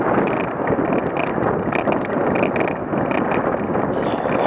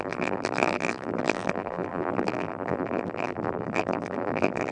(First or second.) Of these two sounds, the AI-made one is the second